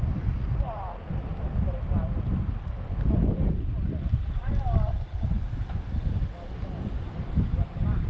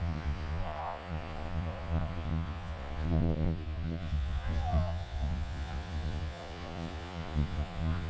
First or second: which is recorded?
first